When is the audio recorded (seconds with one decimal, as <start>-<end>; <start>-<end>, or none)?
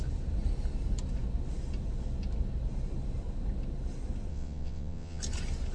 0.0-4.3; 5.2-5.7